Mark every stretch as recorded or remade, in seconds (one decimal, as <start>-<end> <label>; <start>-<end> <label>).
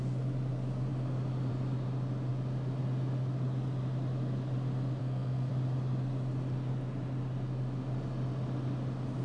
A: 0.0-5.0 recorded; 5.0-5.5 remade; 5.5-9.2 recorded